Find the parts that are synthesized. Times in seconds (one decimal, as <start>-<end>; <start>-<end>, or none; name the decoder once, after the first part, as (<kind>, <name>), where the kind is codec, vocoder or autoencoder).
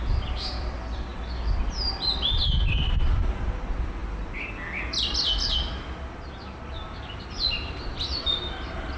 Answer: 0.0-1.1 (vocoder, BigVGAN v2); 1.6-9.0